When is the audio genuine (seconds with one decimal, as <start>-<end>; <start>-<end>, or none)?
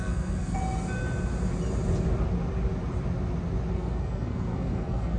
0.6-3.7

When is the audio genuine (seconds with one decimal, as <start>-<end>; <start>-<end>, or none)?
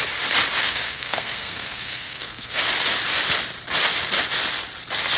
0.0-0.6; 2.6-5.2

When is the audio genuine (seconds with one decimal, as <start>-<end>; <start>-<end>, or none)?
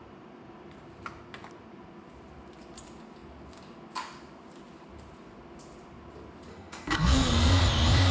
0.0-6.5; 7.6-8.1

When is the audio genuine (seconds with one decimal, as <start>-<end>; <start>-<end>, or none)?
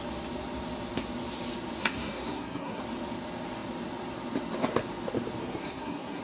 0.0-1.8; 2.8-5.4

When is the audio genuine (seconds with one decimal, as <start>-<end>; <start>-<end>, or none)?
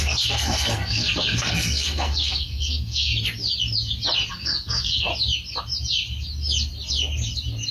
3.1-4.3; 5.1-7.7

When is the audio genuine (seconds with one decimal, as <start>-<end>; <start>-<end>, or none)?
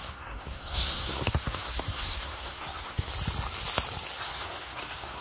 3.1-4.2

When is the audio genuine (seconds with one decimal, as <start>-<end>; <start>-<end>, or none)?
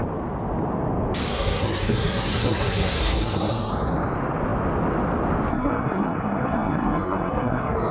0.0-1.3; 3.7-5.5